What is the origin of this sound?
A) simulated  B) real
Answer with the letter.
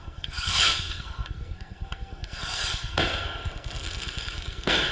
A